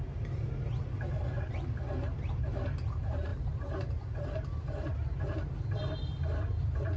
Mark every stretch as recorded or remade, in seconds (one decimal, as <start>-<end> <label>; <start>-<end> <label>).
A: 0.0-7.0 recorded